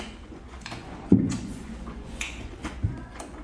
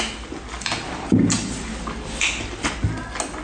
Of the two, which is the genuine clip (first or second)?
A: second